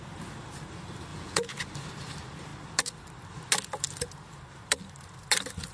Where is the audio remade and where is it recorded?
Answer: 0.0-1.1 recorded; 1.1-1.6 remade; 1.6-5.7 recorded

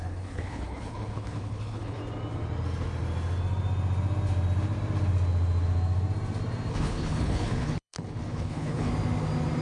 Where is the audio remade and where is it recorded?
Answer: 0.0-2.0 remade; 2.0-6.7 recorded; 6.7-8.9 remade; 8.9-9.6 recorded

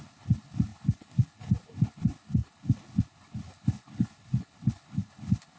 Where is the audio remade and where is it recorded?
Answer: 0.0-5.6 remade